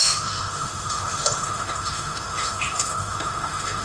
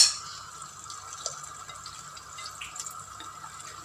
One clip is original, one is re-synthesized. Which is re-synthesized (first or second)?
first